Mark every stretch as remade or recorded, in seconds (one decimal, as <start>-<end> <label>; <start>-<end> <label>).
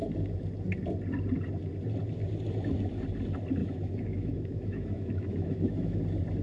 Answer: 0.0-3.6 recorded; 3.6-6.0 remade; 6.0-6.4 recorded